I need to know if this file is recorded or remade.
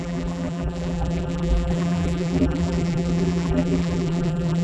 remade